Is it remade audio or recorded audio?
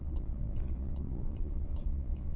remade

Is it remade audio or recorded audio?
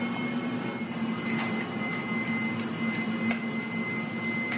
recorded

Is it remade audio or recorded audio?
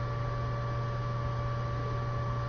recorded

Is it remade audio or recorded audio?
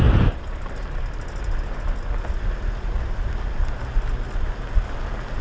recorded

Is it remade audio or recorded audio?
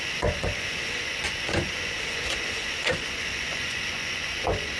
remade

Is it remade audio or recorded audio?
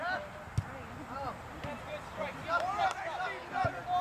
recorded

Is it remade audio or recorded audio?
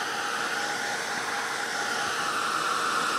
recorded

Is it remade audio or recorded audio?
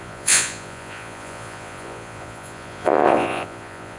remade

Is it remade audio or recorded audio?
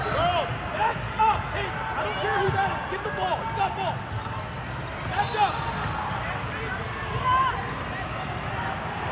recorded